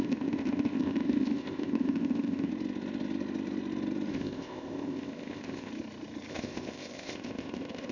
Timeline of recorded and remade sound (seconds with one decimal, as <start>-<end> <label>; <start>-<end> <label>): 0.0-2.5 remade; 2.5-4.1 recorded; 4.1-5.7 remade; 5.7-6.3 recorded; 6.3-7.9 remade